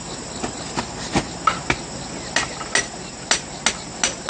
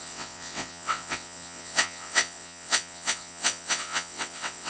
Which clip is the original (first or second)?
first